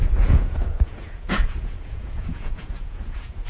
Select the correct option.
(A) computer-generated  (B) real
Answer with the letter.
A